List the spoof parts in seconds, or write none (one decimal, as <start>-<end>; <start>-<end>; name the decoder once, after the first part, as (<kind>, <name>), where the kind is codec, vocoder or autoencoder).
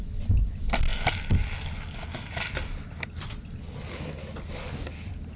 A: none